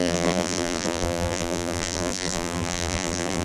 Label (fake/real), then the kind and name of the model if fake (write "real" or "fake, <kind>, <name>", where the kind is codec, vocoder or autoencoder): fake, vocoder, BigVGAN v2